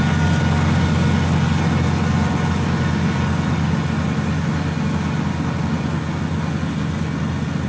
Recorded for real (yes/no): yes